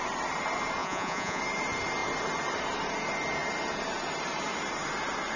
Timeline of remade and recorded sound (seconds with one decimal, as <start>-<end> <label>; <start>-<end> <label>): 0.0-0.8 recorded; 0.8-1.4 remade; 1.4-5.4 recorded

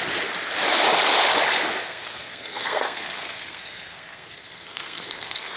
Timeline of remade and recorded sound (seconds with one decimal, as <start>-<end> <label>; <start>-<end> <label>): 0.0-1.8 recorded; 1.8-5.6 remade

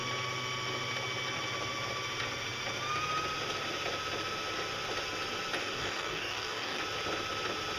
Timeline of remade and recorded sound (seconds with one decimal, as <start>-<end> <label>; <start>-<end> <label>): 0.0-5.6 recorded; 5.6-6.8 remade; 6.8-7.8 recorded

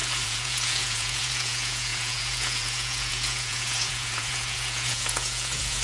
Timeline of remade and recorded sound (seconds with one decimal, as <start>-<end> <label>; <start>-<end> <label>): 0.0-5.8 remade

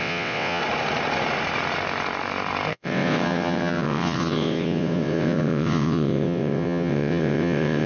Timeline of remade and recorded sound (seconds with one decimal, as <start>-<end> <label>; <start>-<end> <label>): 0.0-0.6 remade; 0.6-2.7 recorded; 2.7-7.9 remade

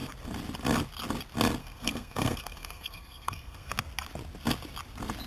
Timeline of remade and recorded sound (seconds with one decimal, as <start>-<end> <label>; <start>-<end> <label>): 0.0-1.6 recorded; 1.6-3.7 remade; 3.7-5.3 recorded